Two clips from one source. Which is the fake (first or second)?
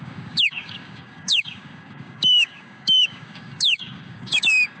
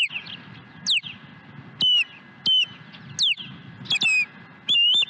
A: first